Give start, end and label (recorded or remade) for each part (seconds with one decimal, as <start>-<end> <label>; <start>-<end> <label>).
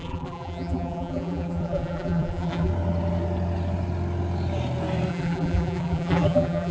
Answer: 0.0-2.7 remade; 2.7-5.1 recorded; 5.1-6.7 remade